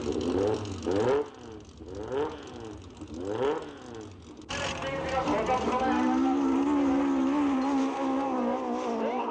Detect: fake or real real